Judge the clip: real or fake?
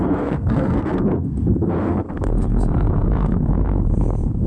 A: fake